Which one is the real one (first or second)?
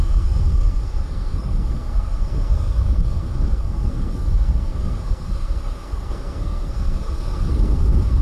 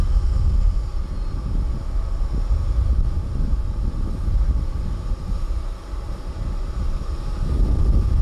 second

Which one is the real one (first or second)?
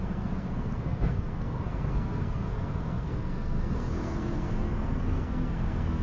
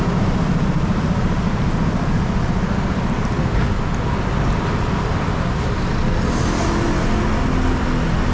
second